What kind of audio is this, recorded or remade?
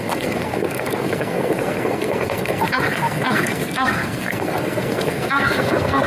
remade